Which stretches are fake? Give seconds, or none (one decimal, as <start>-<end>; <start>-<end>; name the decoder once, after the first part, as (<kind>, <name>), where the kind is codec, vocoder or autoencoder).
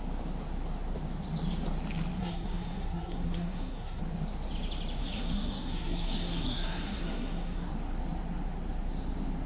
2.2-4.0 (codec, SNAC); 5.0-7.7